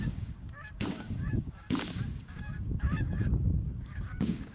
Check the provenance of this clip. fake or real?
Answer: fake